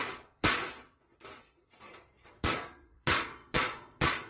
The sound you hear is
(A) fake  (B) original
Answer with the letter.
A